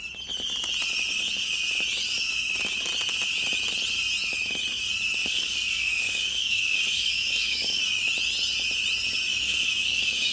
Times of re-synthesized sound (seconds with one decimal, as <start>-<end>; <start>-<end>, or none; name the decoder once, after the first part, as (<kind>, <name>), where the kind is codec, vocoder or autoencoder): 5.2-7.8 (codec, DAC); 9.3-10.3